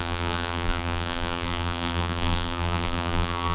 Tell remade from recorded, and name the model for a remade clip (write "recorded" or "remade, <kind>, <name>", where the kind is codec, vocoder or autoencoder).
remade, vocoder, BigVGAN v2